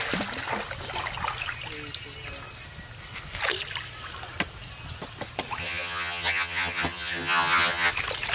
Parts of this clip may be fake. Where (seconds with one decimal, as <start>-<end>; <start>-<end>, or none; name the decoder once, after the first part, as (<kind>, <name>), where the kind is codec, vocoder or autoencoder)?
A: 5.6-7.9 (vocoder, HiFi-GAN)